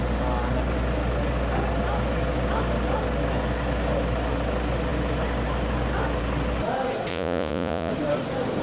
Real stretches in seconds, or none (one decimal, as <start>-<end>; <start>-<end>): 0.0-7.1; 7.9-8.6